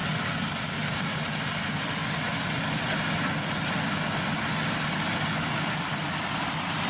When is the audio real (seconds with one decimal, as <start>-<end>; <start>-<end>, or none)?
0.0-6.9